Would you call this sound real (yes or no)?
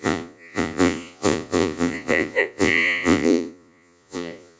no